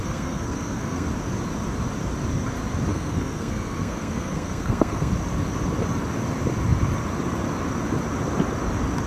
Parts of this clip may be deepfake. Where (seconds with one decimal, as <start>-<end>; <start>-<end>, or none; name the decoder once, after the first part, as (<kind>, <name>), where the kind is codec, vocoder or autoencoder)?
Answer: 0.0-1.1 (codec, SNAC); 2.9-5.1